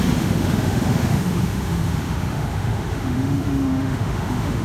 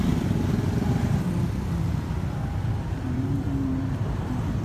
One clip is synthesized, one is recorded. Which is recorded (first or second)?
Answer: second